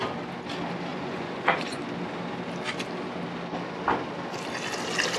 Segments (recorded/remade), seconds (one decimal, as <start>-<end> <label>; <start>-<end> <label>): 0.0-0.9 recorded; 0.9-1.8 remade; 1.8-5.2 recorded